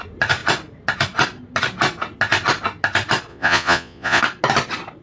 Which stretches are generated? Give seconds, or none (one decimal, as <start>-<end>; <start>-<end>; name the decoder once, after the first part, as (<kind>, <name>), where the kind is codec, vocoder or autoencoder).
3.3-4.2 (vocoder, Vocos)